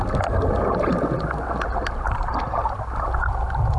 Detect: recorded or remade recorded